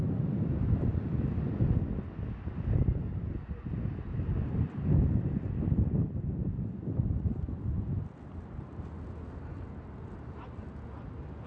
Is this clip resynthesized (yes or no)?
no